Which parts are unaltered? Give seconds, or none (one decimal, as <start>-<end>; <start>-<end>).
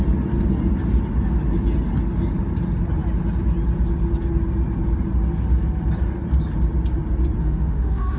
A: 0.0-7.4